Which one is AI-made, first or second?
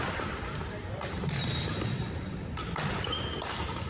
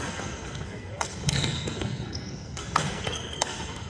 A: second